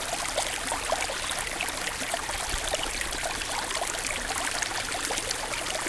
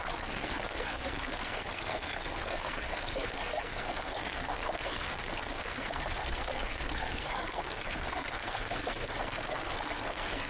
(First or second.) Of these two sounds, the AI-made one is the second